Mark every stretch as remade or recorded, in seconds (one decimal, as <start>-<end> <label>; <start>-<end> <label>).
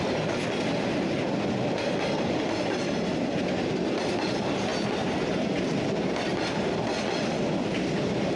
0.0-8.4 recorded